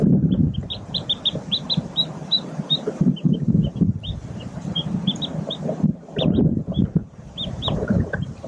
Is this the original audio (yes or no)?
no